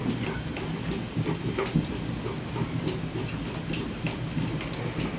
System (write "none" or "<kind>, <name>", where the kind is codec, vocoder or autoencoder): none